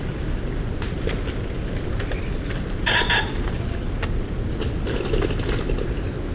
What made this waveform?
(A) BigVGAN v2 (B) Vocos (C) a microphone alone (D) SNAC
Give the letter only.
C